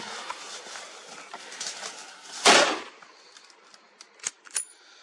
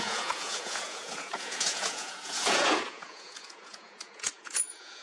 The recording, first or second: first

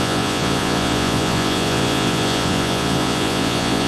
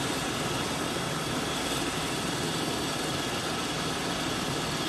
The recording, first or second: second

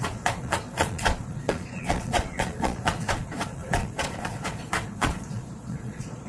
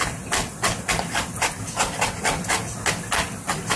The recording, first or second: second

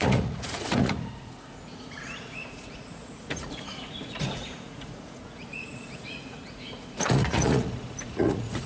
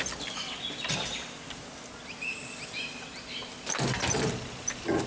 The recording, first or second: second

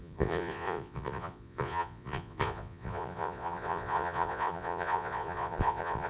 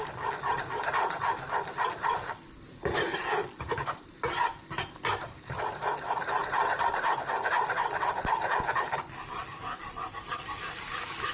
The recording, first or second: second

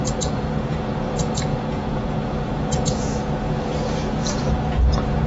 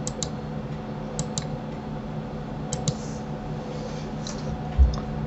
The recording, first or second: second